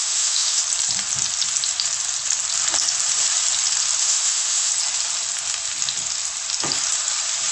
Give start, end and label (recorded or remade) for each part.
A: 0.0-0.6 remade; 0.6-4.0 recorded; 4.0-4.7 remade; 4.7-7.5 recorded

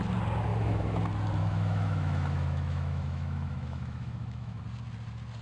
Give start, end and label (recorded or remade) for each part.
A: 0.0-0.5 recorded; 0.5-1.0 remade; 1.0-1.4 recorded; 1.4-4.6 remade; 4.6-5.4 recorded

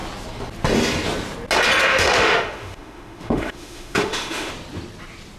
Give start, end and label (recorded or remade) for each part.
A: 0.0-1.9 recorded; 1.9-4.5 remade; 4.5-5.4 recorded

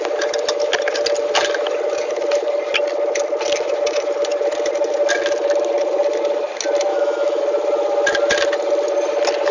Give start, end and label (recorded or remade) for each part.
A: 0.0-6.9 recorded; 6.9-7.4 remade; 7.4-9.5 recorded

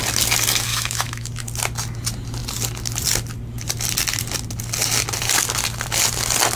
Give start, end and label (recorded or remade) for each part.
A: 0.0-0.7 recorded; 0.7-1.3 remade; 1.3-6.6 recorded

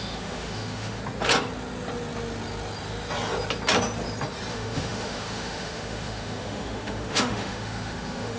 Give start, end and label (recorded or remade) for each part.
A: 0.0-1.0 remade; 1.0-4.5 recorded; 4.5-8.4 remade

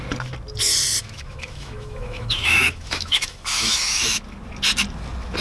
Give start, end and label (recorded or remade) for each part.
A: 0.0-1.0 recorded; 1.0-4.2 remade; 4.2-5.4 recorded